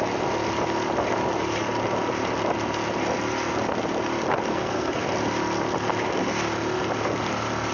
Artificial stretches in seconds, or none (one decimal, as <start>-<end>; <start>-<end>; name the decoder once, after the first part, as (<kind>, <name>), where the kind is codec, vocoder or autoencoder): 4.5-5.0 (codec, SNAC)